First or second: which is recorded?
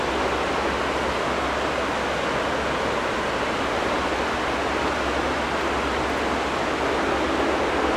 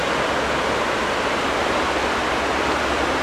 first